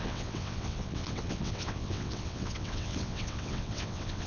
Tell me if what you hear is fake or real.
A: fake